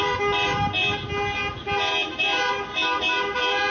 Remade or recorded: recorded